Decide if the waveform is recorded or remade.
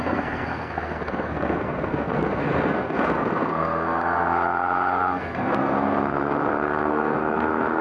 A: remade